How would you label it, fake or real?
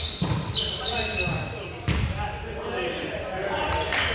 real